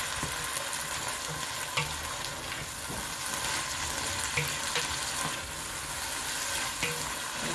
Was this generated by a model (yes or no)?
no